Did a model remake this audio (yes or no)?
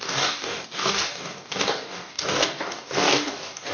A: yes